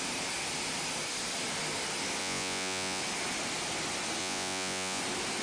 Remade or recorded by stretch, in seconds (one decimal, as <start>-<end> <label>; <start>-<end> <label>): 0.0-2.2 recorded; 2.2-3.0 remade; 3.0-4.2 recorded; 4.2-5.0 remade; 5.0-5.4 recorded